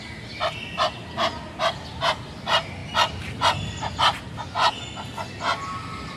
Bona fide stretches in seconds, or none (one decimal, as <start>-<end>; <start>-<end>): 0.0-6.2